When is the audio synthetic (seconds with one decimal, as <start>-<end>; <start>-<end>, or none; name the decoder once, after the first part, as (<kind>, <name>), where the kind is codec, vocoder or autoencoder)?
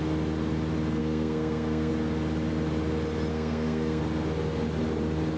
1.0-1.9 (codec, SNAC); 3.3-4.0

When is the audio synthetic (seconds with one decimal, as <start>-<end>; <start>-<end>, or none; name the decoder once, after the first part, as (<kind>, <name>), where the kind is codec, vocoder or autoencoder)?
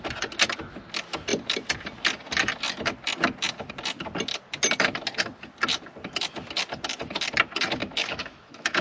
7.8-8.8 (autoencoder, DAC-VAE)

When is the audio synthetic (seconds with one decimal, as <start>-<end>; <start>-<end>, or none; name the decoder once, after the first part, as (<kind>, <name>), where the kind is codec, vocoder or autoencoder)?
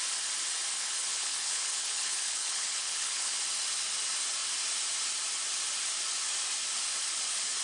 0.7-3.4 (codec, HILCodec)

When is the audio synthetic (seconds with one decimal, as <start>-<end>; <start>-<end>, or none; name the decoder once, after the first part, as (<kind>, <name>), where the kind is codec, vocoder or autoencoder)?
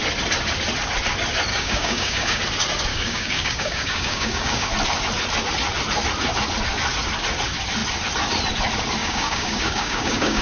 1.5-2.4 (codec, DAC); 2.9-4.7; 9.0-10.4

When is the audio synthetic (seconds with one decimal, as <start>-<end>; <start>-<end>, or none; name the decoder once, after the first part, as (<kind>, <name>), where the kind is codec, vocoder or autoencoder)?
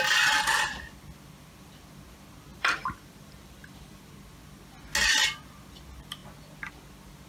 2.5-4.0 (vocoder, BigVGAN v2)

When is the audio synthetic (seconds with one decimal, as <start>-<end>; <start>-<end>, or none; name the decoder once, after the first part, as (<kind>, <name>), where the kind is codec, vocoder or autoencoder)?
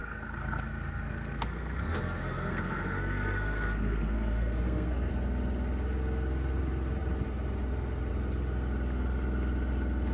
0.0-5.1 (codec, SNAC)